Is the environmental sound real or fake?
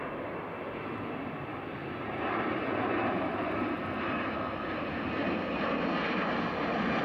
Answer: real